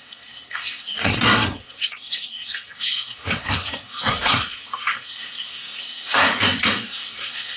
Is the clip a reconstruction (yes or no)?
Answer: yes